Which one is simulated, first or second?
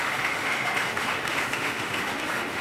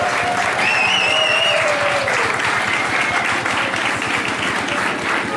first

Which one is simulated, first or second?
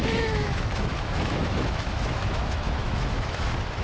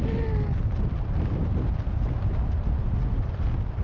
first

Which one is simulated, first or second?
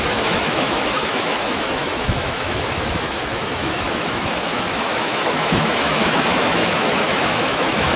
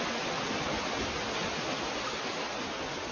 first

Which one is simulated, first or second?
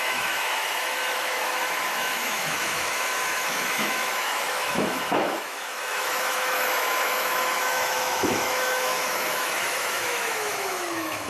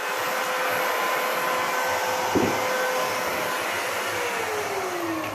first